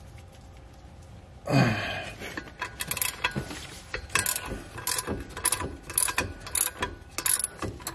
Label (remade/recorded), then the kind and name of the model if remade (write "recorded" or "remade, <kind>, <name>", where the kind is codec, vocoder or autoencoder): recorded